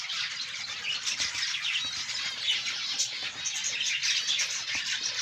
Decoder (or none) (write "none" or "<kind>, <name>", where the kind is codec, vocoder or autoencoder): none